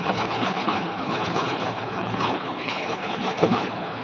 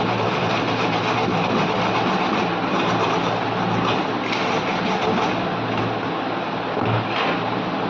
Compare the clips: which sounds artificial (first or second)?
first